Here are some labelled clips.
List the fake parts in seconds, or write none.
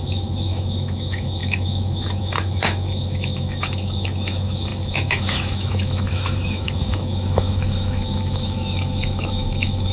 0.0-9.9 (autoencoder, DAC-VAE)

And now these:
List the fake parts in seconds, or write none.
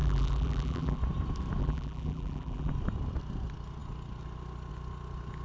0.0-1.0 (vocoder, BigVGAN v2); 1.6-2.7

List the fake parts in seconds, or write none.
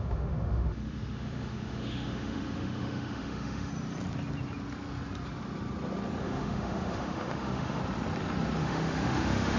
0.0-3.7 (autoencoder, DAC-VAE); 6.2-7.8; 8.6-9.6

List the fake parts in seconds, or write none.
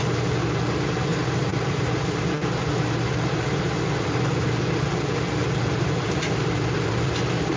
1.1-4.2 (vocoder, BigVGAN v2); 5.4-6.9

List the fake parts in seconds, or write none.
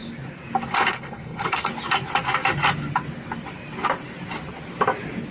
0.9-1.7 (codec, SNAC)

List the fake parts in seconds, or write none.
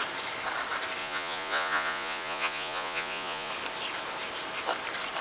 1.0-3.5 (vocoder, Vocos)